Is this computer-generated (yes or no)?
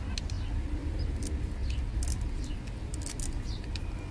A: no